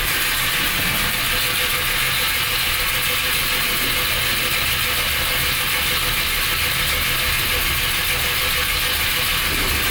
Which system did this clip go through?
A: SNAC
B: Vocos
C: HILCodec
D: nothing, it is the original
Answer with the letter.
D